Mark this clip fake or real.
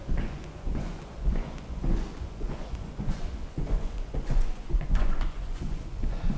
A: fake